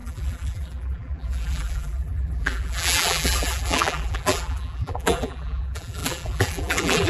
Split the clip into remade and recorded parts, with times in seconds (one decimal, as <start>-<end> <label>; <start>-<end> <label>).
0.0-7.1 remade